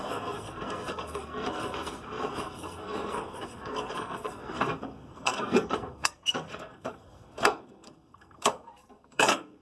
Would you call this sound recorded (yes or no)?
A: no